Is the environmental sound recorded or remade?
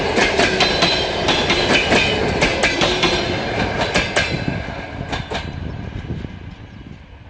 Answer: recorded